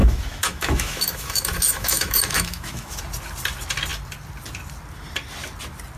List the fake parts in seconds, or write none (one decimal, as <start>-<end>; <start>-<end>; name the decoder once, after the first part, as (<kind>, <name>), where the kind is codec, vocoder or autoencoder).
0.0-3.0 (autoencoder, DAC-VAE)